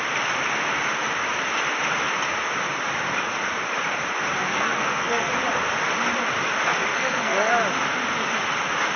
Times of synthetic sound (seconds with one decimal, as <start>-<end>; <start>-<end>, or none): 4.4-5.3; 6.9-7.5